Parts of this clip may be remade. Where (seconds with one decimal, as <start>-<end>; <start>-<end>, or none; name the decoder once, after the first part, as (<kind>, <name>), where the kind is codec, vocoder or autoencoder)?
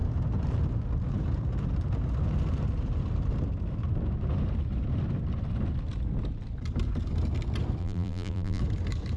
7.8-8.6 (vocoder, BigVGAN v2)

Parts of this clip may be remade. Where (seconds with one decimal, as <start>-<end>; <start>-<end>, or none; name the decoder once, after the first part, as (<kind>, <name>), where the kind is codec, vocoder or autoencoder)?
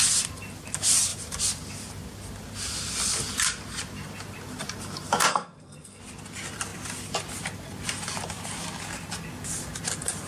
5.3-6.0 (codec, SNAC)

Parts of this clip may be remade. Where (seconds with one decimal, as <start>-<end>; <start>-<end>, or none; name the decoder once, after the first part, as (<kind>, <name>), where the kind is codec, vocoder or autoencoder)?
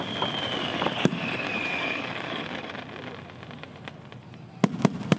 0.6-2.7 (codec, DAC)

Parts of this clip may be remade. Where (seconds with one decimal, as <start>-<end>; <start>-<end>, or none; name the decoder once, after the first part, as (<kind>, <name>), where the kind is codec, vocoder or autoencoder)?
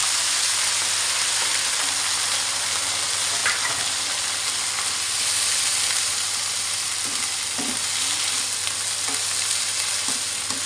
0.0-1.5 (vocoder, BigVGAN v2); 3.4-4.0; 5.7-6.9